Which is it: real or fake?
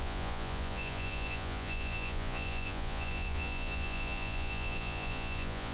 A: fake